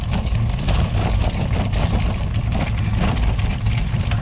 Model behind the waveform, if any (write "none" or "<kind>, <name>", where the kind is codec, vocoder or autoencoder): none